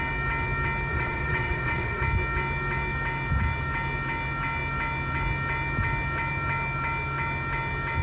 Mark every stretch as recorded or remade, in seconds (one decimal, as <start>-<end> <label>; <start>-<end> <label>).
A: 0.0-0.9 recorded; 0.9-2.0 remade; 2.0-8.0 recorded